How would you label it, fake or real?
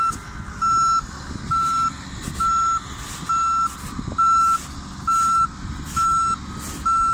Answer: real